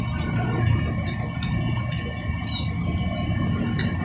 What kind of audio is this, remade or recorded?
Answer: recorded